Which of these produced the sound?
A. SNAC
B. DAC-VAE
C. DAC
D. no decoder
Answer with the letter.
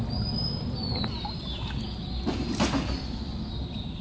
D